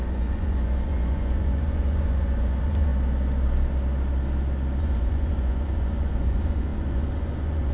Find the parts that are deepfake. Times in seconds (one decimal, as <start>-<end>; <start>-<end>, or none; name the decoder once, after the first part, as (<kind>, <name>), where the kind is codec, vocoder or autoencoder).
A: 0.0-2.9 (vocoder, Vocos); 4.8-7.7